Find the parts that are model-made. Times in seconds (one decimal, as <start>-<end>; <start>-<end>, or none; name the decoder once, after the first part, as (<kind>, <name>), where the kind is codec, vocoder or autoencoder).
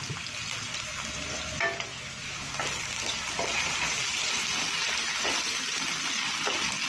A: 1.9-2.5 (autoencoder, DAC-VAE)